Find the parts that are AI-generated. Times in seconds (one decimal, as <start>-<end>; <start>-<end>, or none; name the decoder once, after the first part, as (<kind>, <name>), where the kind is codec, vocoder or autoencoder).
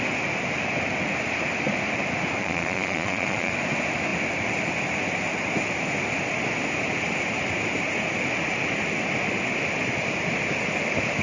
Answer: 2.4-3.5 (vocoder, Vocos)